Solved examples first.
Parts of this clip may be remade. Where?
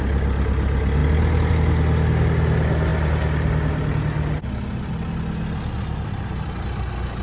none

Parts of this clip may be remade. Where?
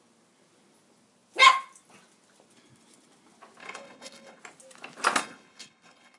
3.6-4.4 (codec, HILCodec); 5.2-6.2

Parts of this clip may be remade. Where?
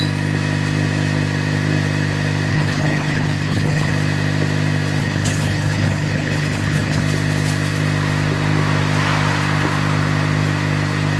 2.5-3.9 (codec, HILCodec); 5.0-7.0